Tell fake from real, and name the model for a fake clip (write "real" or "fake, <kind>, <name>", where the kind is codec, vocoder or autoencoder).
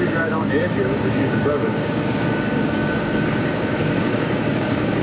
fake, codec, DAC